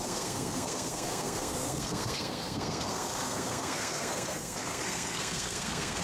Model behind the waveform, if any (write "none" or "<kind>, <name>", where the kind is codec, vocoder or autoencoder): codec, SNAC